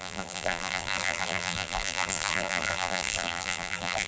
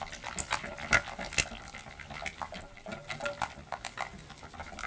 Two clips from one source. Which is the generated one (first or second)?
first